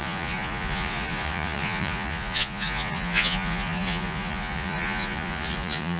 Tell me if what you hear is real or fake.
fake